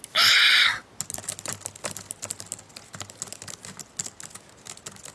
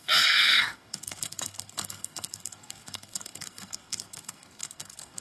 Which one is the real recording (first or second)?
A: first